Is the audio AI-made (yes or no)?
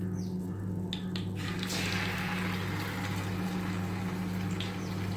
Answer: no